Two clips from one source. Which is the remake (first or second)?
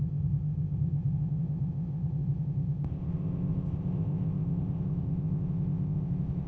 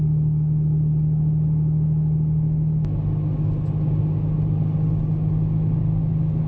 first